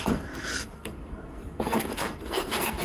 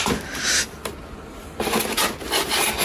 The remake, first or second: first